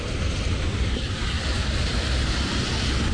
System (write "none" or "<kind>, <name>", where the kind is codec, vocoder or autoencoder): none